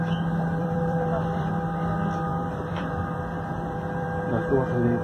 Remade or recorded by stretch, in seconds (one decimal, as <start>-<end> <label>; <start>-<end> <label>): 0.0-0.6 recorded; 0.6-1.5 remade; 1.5-2.3 recorded; 2.3-4.2 remade; 4.2-5.0 recorded